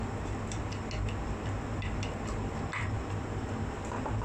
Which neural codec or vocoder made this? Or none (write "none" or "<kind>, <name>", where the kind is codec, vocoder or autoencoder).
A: none